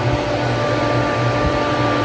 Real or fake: real